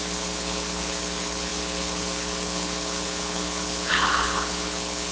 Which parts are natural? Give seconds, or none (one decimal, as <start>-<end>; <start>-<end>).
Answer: none